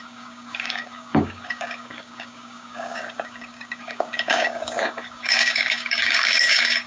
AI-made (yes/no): yes